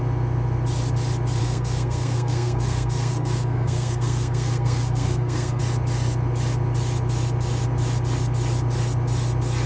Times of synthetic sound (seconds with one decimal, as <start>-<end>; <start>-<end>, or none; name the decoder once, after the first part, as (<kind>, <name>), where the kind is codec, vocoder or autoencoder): 1.4-5.6 (codec, SNAC)